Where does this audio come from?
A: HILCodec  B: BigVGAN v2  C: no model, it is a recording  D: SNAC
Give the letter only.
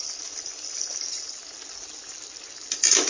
C